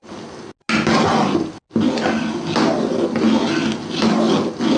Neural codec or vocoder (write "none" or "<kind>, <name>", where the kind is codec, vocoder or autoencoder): none